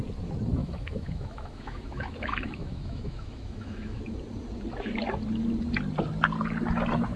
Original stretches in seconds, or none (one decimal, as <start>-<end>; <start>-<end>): 0.0-0.6; 4.0-7.2